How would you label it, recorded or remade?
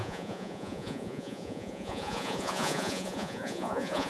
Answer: remade